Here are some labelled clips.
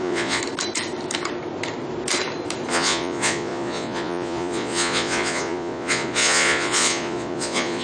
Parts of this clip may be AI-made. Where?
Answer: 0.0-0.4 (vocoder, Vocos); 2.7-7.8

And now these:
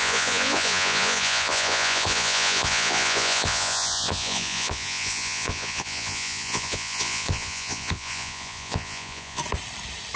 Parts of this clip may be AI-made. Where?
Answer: 0.0-9.4 (vocoder, Vocos)

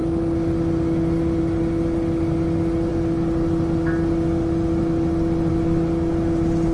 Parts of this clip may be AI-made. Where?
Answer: none

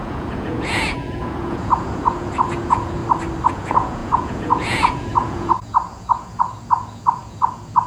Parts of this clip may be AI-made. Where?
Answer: 0.0-3.0 (vocoder, Vocos); 3.5-7.9